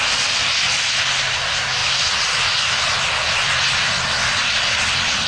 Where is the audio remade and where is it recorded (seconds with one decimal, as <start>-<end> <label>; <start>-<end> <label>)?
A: 0.0-5.3 recorded